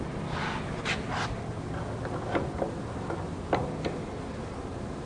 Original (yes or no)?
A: yes